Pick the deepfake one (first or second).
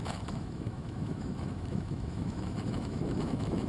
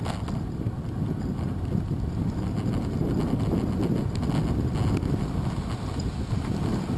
first